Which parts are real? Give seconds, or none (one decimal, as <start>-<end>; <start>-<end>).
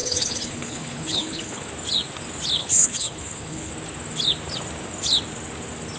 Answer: 1.7-2.6; 3.7-6.0